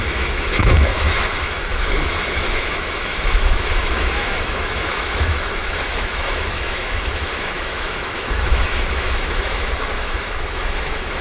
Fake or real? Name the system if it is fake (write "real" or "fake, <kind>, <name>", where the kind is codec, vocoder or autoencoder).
fake, autoencoder, DAC-VAE